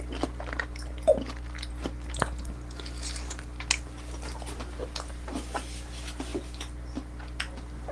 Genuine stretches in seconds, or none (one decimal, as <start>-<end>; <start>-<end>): 0.0-7.9